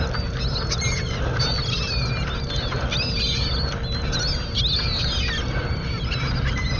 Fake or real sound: real